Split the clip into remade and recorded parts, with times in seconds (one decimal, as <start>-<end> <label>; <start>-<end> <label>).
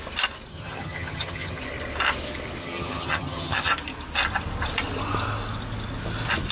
0.0-0.5 recorded; 0.5-1.6 remade; 1.6-2.6 recorded; 2.6-3.7 remade; 3.7-6.5 recorded